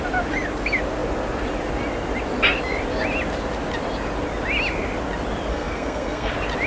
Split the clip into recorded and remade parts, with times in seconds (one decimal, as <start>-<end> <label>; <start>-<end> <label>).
0.0-5.5 recorded; 5.5-6.3 remade; 6.3-6.7 recorded